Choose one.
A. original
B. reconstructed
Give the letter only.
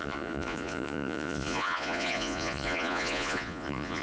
B